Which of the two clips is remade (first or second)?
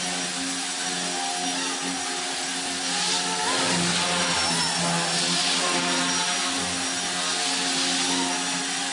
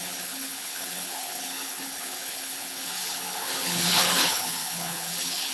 second